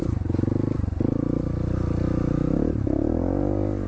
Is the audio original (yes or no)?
yes